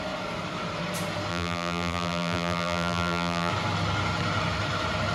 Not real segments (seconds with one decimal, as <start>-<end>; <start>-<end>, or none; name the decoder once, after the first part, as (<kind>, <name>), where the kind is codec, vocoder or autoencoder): 1.3-3.5 (vocoder, BigVGAN v2)